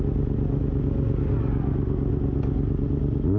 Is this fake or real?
real